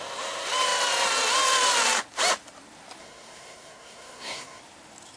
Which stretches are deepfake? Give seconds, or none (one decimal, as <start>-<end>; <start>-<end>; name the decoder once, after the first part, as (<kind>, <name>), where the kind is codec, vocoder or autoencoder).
3.0-4.6 (codec, SNAC)